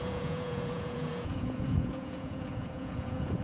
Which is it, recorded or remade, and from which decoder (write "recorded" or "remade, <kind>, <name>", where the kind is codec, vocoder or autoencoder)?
remade, vocoder, Vocos